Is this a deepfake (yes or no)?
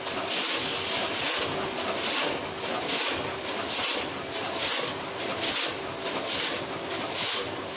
no